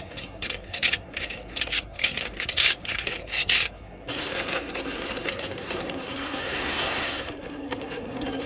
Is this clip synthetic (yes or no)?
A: yes